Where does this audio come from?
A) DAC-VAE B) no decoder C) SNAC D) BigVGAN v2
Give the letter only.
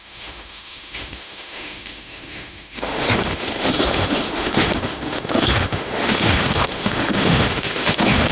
A